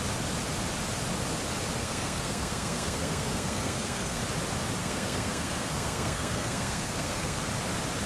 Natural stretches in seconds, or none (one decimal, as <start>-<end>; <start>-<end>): 0.0-1.8; 4.2-4.8; 7.5-8.1